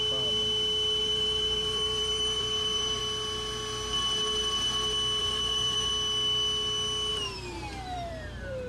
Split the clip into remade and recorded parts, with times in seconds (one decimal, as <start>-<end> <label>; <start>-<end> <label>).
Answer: 0.0-1.0 recorded; 1.0-3.0 remade; 3.0-5.2 recorded; 5.2-5.9 remade; 5.9-7.1 recorded; 7.1-8.7 remade